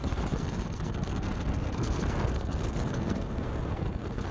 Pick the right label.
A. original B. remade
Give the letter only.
B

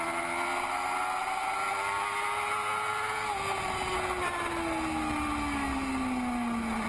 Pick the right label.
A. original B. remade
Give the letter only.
A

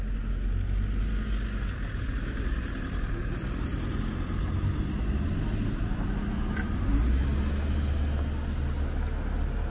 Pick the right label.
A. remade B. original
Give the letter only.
B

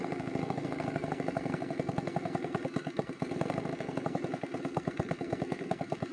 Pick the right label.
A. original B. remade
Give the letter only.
B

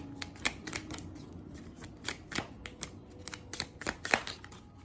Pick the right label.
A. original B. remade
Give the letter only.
A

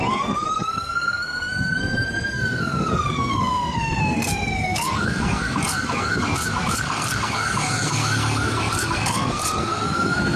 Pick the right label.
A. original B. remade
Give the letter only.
B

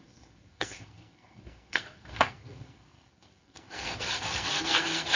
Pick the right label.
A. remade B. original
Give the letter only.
A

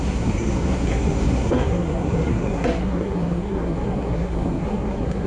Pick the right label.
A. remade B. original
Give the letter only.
A